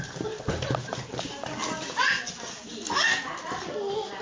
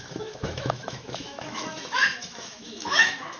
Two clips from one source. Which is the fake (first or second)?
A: second